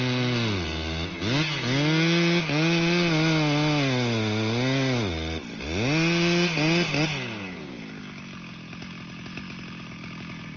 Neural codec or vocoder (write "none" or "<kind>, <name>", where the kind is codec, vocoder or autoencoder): none